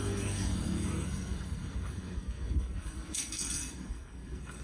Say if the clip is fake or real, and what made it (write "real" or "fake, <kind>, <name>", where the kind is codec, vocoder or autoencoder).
fake, codec, SNAC